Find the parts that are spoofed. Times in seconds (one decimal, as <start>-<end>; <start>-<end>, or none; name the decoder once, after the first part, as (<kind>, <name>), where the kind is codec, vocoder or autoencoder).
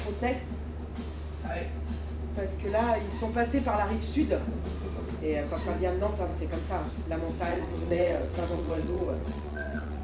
7.5-10.0 (vocoder, WaveNeXt)